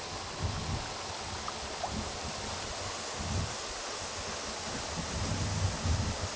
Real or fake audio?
real